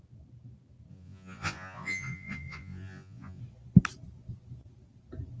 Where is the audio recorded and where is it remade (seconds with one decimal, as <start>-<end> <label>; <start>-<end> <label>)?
0.0-0.9 recorded; 0.9-3.4 remade; 3.4-5.4 recorded